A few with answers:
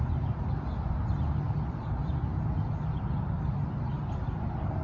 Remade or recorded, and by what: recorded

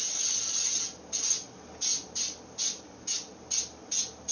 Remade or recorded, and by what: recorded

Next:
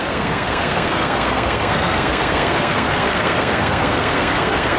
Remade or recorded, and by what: remade, codec, SNAC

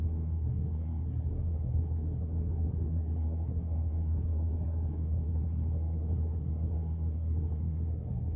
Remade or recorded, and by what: remade, codec, SNAC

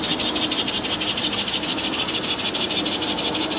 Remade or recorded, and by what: recorded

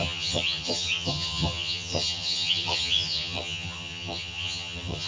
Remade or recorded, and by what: remade, vocoder, HiFi-GAN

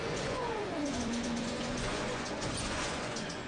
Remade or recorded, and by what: remade, vocoder, Vocos